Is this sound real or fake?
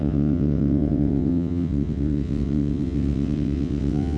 fake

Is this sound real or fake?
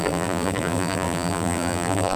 fake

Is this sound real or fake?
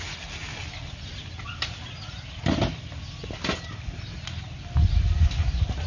real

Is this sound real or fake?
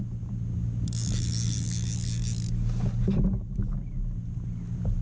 real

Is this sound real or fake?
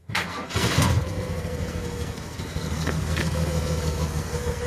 fake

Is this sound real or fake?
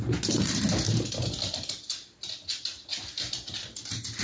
real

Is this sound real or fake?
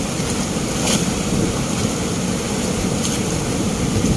real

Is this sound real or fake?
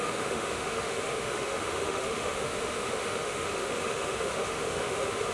fake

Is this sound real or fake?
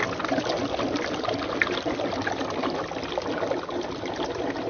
real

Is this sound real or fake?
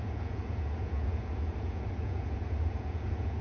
fake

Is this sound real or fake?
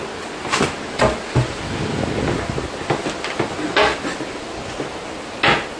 real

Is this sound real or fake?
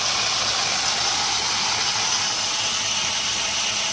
real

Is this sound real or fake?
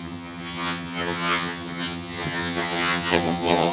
fake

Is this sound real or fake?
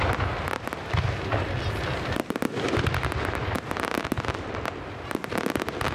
real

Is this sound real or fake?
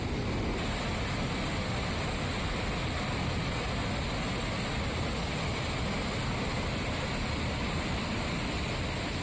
real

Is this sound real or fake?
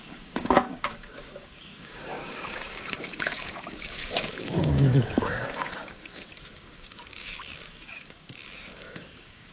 fake